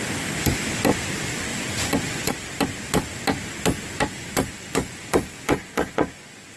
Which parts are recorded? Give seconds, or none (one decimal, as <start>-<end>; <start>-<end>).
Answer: 0.0-1.5; 2.3-4.1